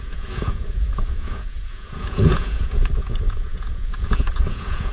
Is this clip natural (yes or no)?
no